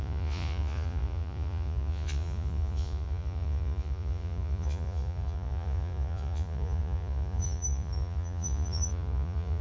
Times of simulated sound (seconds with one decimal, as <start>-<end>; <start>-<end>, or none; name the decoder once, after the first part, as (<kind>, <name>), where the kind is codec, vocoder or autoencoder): 0.0-9.6 (vocoder, Vocos)